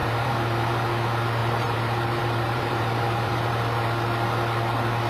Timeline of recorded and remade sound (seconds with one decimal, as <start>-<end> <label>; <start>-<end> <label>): 0.0-0.9 remade; 0.9-1.4 recorded; 1.4-3.5 remade; 3.5-5.1 recorded